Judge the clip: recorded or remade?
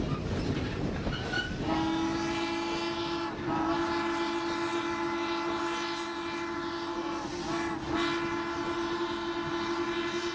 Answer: recorded